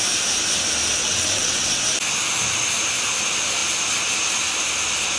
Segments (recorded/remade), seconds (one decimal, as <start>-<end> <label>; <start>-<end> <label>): 0.0-1.0 recorded; 1.0-1.8 remade; 1.8-5.2 recorded